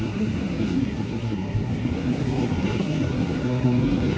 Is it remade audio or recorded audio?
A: remade